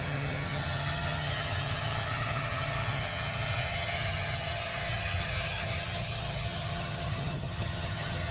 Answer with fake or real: fake